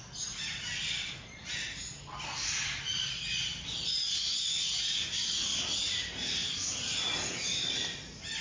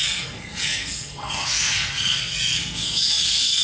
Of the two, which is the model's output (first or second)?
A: second